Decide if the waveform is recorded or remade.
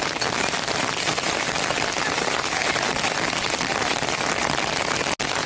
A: recorded